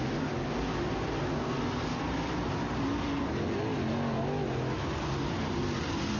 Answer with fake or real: real